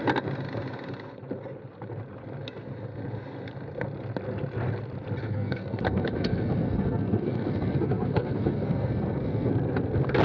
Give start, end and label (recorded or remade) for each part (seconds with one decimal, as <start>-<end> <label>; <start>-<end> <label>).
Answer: 0.0-5.2 recorded; 5.2-9.5 remade; 9.5-10.2 recorded